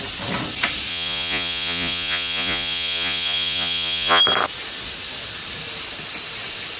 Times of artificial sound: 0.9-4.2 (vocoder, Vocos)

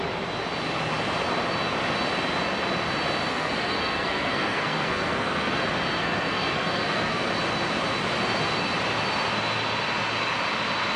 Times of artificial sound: 3.3-5.6 (codec, SNAC); 6.0-7.3

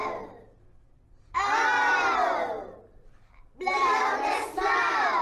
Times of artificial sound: 1.3-5.2 (vocoder, BigVGAN v2)